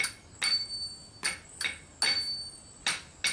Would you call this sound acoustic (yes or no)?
yes